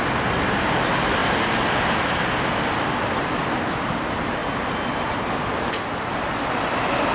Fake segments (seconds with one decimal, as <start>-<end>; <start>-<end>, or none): none